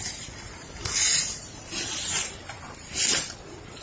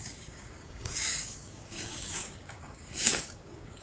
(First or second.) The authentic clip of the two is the first